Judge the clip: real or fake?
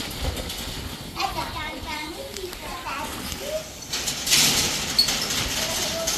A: real